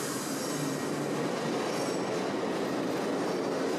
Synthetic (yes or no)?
no